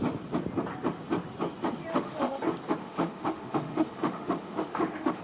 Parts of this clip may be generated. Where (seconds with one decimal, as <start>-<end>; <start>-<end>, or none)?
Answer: 1.9-2.4; 2.8-5.2

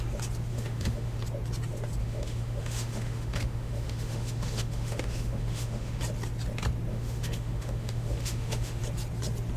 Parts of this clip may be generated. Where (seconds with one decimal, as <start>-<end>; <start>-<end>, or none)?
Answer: 0.5-1.2; 2.0-6.0; 6.9-8.8